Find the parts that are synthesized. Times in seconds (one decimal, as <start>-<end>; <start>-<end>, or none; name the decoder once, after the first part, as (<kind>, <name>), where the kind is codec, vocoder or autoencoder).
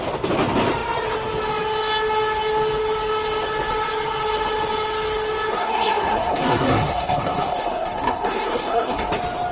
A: 5.5-9.1 (codec, SNAC)